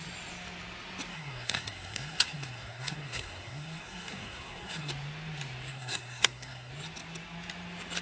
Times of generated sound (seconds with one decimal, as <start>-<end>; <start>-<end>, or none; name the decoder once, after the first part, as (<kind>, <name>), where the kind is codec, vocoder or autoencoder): 1.1-4.9 (codec, SNAC); 5.7-6.7